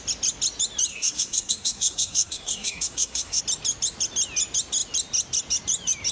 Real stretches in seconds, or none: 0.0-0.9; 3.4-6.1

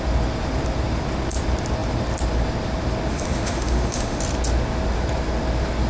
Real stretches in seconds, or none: 0.0-3.1; 4.2-5.9

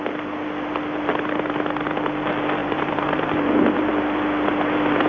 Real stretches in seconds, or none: 0.0-2.6; 3.3-5.1